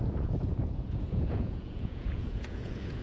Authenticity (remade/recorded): remade